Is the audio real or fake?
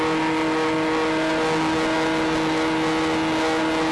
real